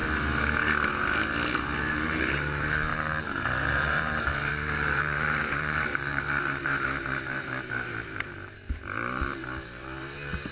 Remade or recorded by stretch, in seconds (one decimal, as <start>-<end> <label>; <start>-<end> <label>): 0.0-1.8 recorded; 1.8-10.5 remade